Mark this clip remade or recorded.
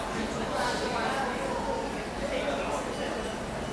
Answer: recorded